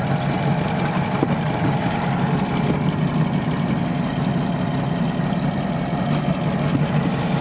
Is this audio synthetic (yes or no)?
no